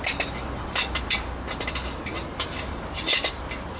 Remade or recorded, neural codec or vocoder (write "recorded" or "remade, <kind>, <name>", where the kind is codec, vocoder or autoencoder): remade, vocoder, BigVGAN v2